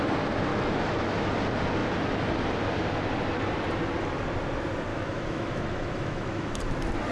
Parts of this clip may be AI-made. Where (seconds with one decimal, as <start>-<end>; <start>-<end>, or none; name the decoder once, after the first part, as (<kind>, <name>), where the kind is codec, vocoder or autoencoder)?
0.5-1.3 (autoencoder, DAC-VAE); 4.9-6.6